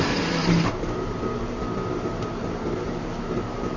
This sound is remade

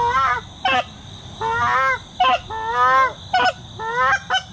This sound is recorded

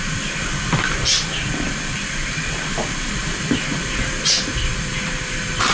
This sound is recorded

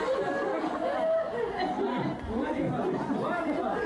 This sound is recorded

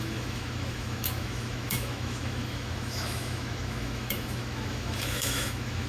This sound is remade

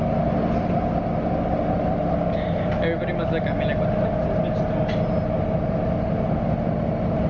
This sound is recorded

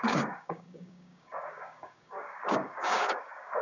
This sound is remade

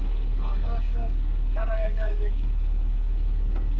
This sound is remade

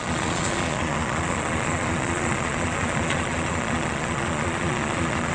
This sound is remade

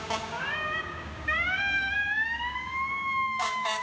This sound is remade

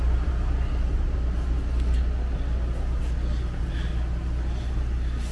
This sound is recorded